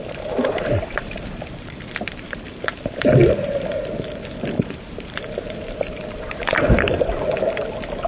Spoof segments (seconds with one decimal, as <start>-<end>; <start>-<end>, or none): 0.0-8.1